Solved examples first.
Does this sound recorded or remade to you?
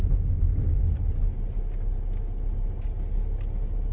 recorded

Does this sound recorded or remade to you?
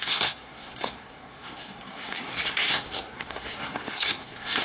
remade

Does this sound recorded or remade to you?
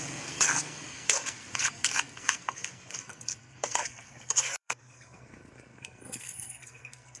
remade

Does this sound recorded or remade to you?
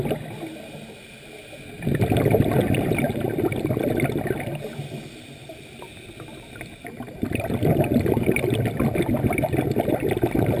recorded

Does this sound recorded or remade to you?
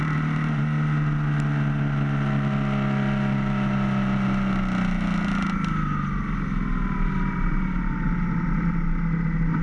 recorded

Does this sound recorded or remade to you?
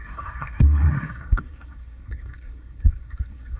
remade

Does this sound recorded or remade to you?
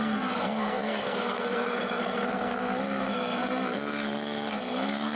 remade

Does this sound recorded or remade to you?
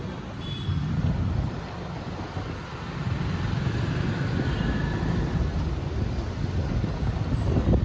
recorded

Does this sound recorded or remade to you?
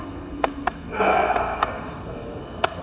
remade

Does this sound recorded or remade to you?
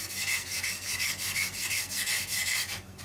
remade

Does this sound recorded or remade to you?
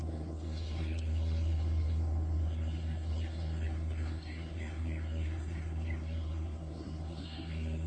remade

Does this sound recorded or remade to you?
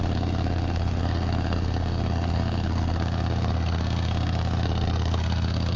remade